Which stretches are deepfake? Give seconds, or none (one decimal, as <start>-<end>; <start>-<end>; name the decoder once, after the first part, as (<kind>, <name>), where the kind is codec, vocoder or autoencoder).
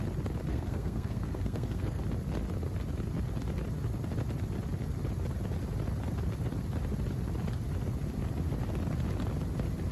0.5-2.0 (codec, SNAC)